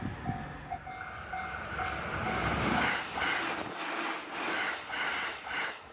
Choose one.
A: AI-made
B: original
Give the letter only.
B